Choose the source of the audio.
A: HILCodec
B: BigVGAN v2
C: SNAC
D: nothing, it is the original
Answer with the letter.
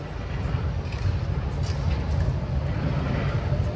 D